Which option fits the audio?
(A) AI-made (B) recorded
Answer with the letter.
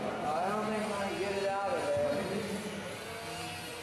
B